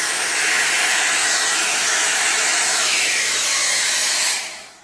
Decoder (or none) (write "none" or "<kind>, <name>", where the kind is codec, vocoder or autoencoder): autoencoder, DAC-VAE